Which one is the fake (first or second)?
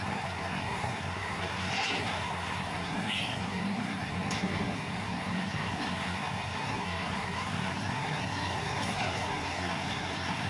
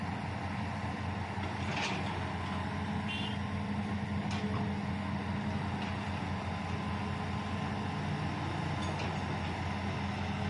first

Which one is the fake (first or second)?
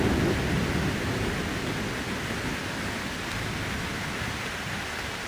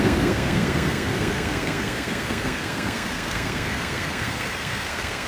second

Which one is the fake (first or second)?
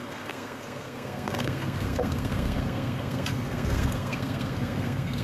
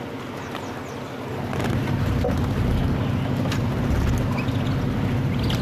first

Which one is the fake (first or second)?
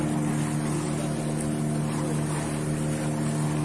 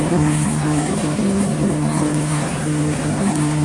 second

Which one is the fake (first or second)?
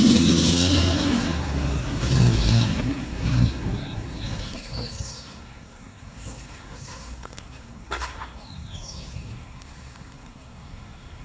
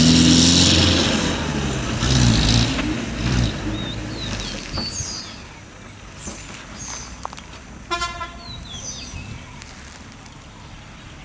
first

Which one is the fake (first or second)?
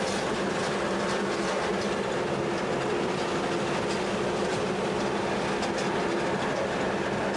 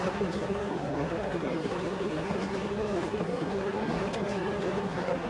second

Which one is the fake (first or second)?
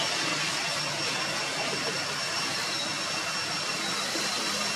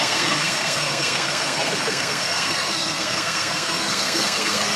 second